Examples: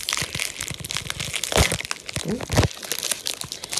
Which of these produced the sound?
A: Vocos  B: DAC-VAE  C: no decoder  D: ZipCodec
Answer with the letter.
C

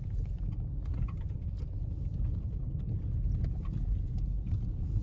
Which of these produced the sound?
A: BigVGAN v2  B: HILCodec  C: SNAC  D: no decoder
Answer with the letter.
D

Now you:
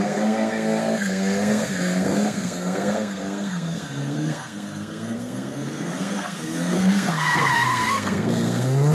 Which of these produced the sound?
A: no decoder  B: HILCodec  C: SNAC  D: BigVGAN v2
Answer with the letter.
C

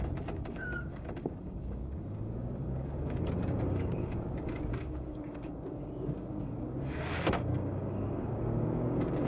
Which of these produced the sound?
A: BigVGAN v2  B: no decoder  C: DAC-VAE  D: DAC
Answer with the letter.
D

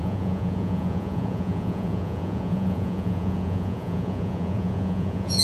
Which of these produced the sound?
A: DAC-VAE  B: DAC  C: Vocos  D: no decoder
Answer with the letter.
C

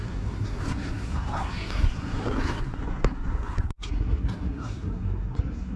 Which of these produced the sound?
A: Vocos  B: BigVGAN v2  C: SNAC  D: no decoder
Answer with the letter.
C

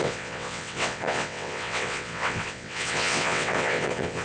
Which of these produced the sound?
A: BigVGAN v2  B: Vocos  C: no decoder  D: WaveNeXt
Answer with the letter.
D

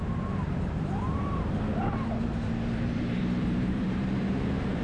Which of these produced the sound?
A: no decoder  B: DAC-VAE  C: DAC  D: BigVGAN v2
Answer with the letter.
D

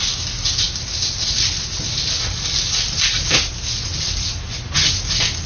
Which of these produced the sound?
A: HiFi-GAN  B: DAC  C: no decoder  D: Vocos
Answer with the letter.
C